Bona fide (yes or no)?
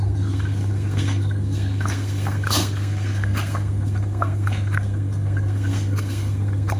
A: no